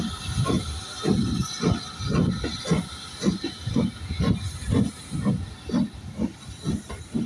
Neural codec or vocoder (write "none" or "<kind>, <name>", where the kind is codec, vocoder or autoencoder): none